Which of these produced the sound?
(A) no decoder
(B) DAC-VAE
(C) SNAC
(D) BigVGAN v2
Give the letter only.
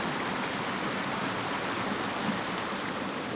A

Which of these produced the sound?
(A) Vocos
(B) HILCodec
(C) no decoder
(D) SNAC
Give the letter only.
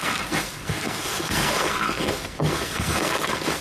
D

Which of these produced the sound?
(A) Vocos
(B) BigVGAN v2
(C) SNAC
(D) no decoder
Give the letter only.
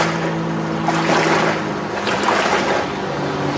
D